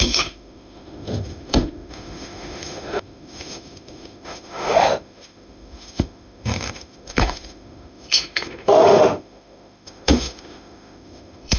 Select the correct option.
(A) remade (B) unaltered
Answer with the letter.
A